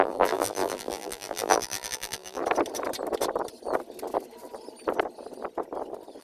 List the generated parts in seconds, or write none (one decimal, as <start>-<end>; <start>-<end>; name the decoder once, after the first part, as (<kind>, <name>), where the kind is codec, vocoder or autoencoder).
0.0-2.4 (vocoder, BigVGAN v2)